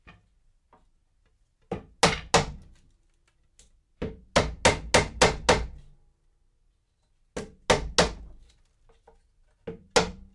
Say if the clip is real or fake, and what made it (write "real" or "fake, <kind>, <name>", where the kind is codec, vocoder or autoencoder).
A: real